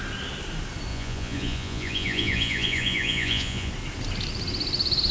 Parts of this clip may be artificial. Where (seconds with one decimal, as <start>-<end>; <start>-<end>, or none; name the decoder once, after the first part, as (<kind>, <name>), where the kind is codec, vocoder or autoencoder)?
0.9-3.7 (vocoder, Vocos)